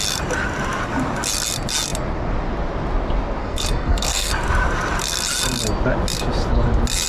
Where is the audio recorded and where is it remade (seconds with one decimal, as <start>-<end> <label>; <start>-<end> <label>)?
0.0-3.4 recorded; 3.4-4.3 remade; 4.3-7.1 recorded